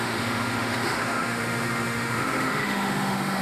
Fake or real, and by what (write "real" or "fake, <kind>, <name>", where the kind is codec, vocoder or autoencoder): fake, autoencoder, DAC-VAE